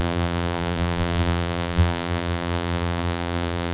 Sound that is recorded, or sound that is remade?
remade